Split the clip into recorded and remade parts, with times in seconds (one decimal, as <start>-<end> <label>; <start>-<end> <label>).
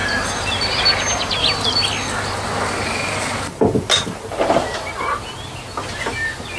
0.0-6.6 recorded